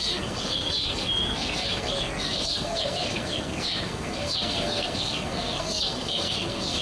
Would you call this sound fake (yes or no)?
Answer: yes